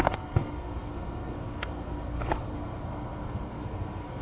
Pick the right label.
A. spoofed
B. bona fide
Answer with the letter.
A